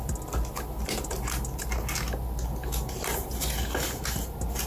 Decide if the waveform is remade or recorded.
recorded